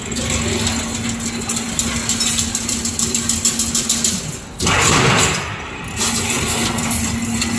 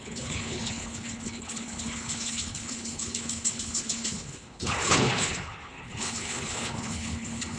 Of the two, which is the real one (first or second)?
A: first